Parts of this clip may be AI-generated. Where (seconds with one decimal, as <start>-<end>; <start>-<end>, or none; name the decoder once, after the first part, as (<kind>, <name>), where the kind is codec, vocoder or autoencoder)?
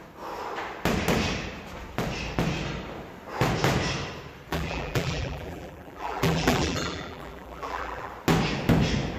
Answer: 4.5-8.1 (vocoder, BigVGAN v2)